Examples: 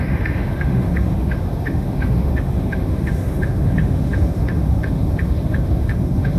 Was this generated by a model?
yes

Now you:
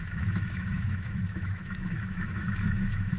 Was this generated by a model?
yes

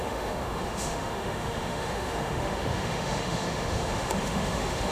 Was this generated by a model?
yes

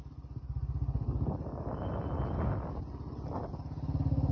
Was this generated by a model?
no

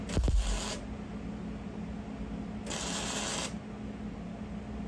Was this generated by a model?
no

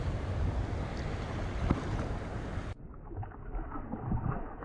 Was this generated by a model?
no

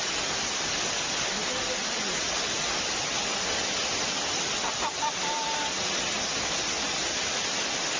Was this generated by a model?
no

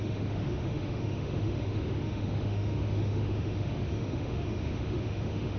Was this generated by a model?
yes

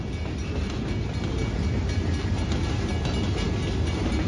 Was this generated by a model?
no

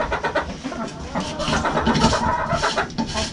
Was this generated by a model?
no